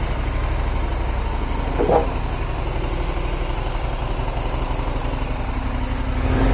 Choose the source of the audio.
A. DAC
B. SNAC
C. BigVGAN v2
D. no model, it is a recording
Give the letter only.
D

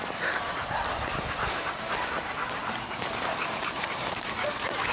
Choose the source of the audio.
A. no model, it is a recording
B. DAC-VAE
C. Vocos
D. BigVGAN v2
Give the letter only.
D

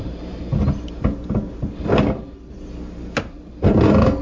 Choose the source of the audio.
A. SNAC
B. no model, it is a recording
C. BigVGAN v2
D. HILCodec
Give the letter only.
B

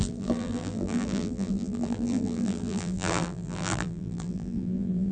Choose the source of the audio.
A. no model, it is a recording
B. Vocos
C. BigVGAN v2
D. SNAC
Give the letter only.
C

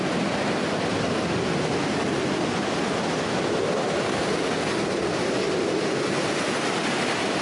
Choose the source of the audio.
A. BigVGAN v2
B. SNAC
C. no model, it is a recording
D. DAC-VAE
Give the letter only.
C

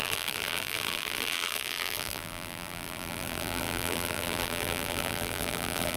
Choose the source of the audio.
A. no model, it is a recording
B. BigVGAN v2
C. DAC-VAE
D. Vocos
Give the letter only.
B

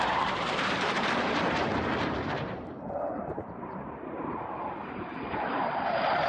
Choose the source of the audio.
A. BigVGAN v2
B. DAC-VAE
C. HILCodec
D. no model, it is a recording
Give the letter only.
A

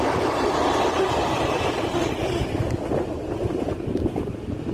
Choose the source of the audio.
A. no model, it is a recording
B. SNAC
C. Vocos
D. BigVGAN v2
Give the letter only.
A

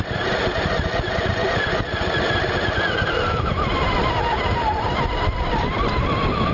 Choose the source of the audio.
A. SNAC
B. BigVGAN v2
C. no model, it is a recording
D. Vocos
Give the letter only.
B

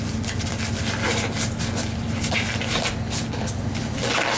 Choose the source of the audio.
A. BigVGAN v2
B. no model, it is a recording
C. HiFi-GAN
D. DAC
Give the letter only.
B